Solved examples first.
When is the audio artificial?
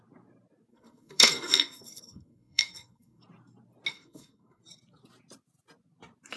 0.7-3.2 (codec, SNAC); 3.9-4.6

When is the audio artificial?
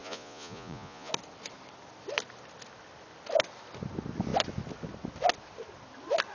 0.0-1.1 (vocoder, Vocos)